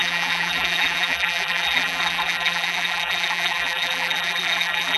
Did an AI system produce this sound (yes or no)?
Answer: yes